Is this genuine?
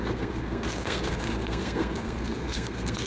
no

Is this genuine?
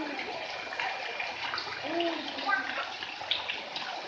yes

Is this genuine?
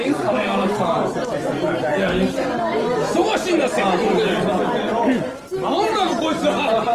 no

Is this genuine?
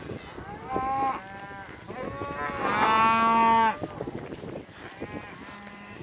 yes